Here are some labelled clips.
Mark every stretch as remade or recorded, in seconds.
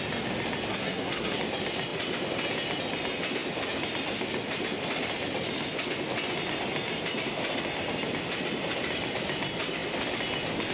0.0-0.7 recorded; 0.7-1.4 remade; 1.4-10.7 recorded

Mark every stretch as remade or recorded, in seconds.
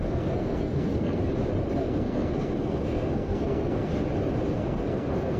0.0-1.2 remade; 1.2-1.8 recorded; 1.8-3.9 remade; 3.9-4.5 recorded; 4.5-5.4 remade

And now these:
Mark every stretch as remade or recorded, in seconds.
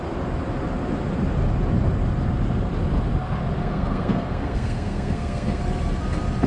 0.0-3.6 recorded; 3.6-5.6 remade; 5.6-6.5 recorded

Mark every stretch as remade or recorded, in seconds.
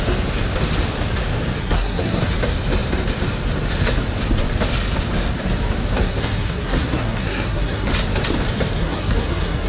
0.0-1.6 recorded; 1.6-2.2 remade; 2.2-6.0 recorded; 6.0-7.9 remade; 7.9-8.8 recorded; 8.8-9.7 remade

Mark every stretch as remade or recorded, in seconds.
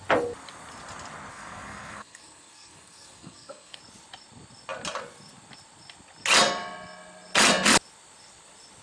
0.0-1.3 recorded; 1.3-3.8 remade; 3.8-8.8 recorded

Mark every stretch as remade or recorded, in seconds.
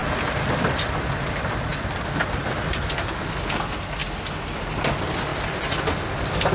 0.0-6.5 recorded